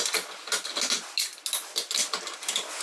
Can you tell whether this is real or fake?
real